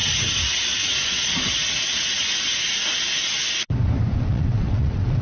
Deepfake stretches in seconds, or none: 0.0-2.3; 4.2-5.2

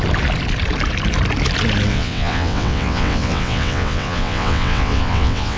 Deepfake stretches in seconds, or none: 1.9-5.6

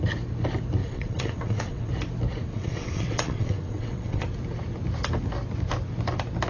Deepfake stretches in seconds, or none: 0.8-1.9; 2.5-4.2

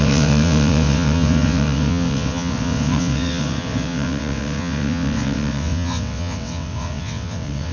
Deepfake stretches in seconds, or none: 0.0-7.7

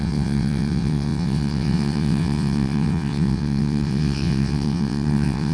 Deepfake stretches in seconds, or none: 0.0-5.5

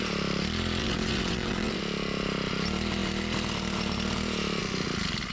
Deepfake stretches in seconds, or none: 0.8-1.8

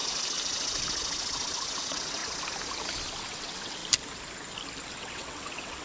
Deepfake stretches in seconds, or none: 1.8-2.2; 3.2-3.8; 4.9-5.8